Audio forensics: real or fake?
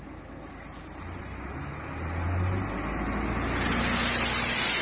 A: real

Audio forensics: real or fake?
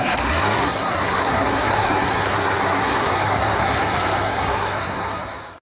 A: fake